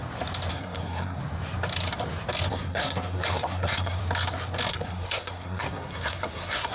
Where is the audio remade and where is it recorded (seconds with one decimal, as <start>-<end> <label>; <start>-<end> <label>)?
0.0-0.5 recorded; 0.5-1.2 remade; 1.2-2.5 recorded; 2.5-4.0 remade; 4.0-4.7 recorded; 4.7-6.7 remade